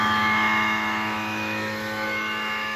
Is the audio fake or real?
fake